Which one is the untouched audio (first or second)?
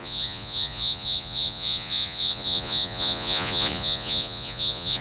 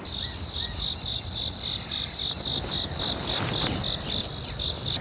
second